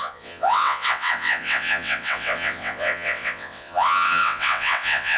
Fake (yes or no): yes